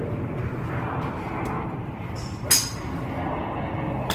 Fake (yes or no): no